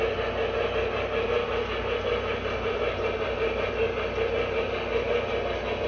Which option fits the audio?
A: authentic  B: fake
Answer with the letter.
A